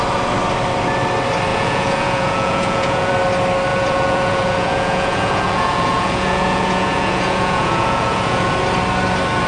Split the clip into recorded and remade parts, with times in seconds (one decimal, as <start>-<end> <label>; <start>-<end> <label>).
0.0-1.5 recorded; 1.5-3.1 remade; 3.1-3.7 recorded; 3.7-8.5 remade; 8.5-9.5 recorded